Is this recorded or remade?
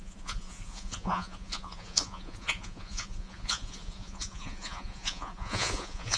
remade